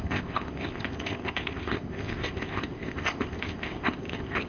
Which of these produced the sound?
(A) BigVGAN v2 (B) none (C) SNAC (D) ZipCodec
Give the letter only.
D